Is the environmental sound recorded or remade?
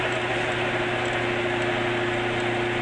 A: recorded